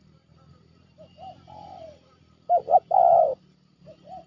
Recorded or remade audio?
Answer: remade